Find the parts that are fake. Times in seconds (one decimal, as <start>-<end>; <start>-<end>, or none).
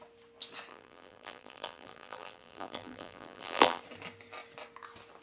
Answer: 0.7-3.8